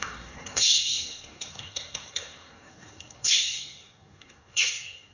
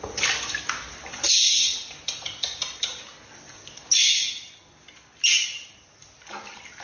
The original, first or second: second